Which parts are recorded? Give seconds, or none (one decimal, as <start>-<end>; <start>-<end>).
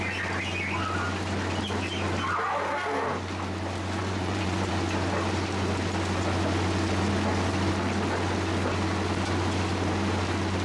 0.0-4.0; 4.7-10.6